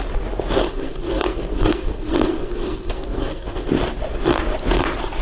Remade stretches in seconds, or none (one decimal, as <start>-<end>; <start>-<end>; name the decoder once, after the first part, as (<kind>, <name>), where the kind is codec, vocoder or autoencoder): 0.6-3.7 (codec, SNAC)